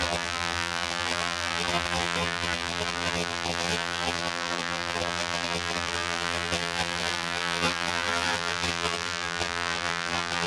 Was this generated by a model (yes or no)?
yes